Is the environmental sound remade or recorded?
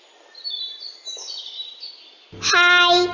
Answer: recorded